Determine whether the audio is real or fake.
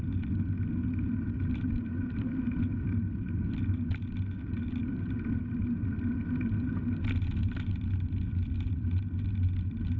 real